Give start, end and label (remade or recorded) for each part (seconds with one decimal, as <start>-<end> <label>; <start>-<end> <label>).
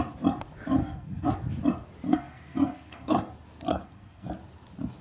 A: 0.0-0.8 recorded; 0.8-1.3 remade; 1.3-2.1 recorded; 2.1-3.2 remade; 3.2-3.7 recorded; 3.7-4.3 remade; 4.3-5.0 recorded